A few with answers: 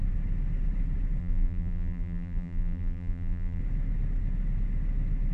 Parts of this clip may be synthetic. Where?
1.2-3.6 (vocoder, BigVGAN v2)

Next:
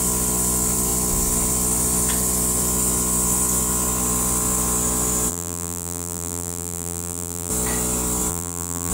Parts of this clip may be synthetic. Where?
5.3-7.5 (vocoder, BigVGAN v2); 8.3-8.9

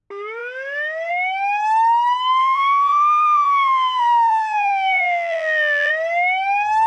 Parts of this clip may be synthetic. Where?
2.4-5.9 (vocoder, BigVGAN v2)